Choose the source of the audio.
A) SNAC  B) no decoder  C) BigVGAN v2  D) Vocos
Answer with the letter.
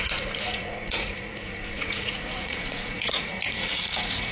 D